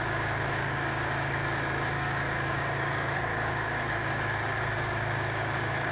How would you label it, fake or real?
fake